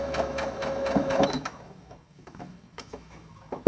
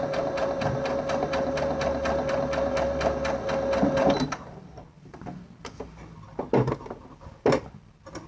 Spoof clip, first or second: first